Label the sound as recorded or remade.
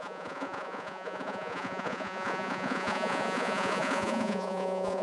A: remade